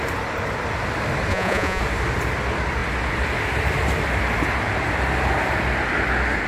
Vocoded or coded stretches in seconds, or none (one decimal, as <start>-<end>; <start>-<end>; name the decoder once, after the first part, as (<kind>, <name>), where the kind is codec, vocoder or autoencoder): 1.3-1.8 (vocoder, Vocos)